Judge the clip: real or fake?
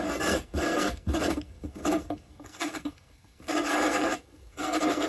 fake